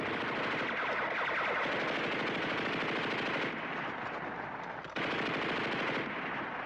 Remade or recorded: remade